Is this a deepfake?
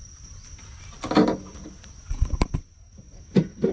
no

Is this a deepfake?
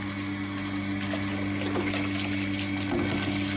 no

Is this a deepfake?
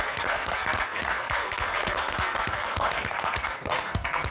yes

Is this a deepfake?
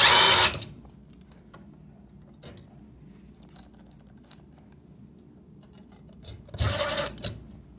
no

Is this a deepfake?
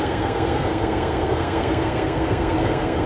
yes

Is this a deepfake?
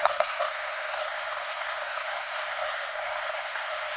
yes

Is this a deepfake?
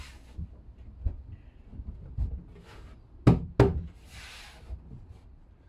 no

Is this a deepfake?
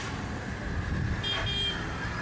no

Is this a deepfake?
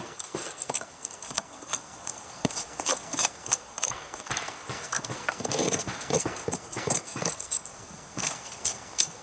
yes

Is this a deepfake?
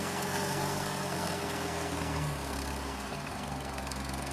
yes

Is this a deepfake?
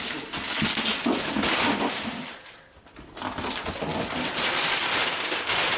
no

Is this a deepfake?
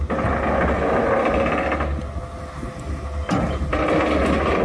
no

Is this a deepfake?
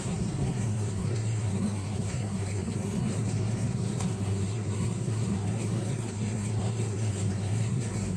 yes